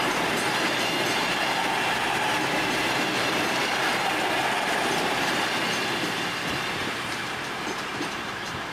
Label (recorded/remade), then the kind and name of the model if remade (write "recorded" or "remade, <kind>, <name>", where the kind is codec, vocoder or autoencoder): remade, vocoder, BigVGAN v2